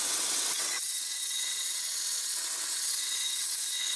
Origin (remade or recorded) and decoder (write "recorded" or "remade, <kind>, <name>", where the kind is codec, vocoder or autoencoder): remade, vocoder, WaveNeXt